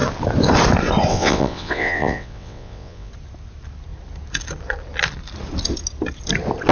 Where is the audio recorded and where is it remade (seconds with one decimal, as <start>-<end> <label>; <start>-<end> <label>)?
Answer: 0.0-1.1 recorded; 1.1-3.1 remade; 3.1-6.7 recorded